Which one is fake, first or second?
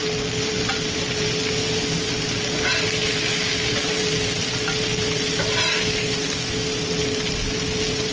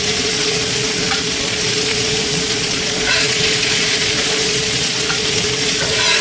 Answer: second